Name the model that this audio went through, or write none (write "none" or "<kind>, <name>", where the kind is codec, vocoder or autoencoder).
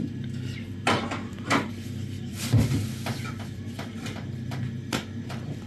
vocoder, BigVGAN v2